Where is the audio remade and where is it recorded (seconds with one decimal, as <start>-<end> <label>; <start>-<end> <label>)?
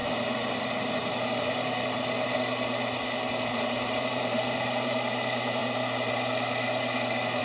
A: 0.0-3.3 recorded; 3.3-5.6 remade; 5.6-7.4 recorded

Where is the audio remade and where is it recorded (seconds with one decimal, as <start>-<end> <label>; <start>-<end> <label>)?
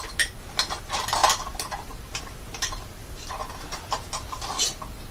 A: 0.0-3.0 recorded; 3.0-4.1 remade; 4.1-5.1 recorded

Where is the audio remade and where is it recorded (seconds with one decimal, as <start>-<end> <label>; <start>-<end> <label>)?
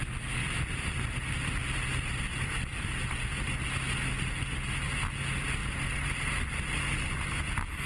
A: 0.0-0.4 recorded; 0.4-2.8 remade; 2.8-5.6 recorded; 5.6-6.3 remade; 6.3-7.9 recorded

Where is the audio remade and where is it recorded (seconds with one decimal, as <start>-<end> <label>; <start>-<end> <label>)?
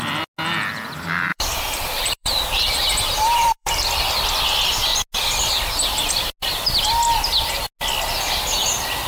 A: 0.0-1.3 recorded; 1.3-3.9 remade; 3.9-9.1 recorded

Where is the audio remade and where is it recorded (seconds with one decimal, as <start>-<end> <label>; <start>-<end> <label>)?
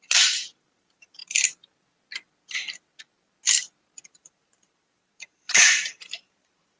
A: 0.0-1.2 remade; 1.2-4.1 recorded; 4.1-6.8 remade